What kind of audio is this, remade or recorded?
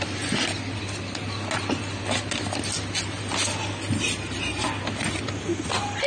recorded